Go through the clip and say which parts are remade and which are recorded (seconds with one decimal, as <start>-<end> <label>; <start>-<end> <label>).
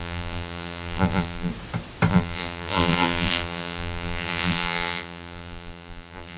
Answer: 0.0-1.5 remade; 1.5-2.1 recorded; 2.1-6.4 remade